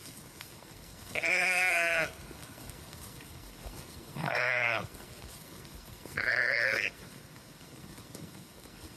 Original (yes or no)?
no